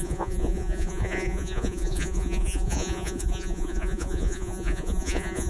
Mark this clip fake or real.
fake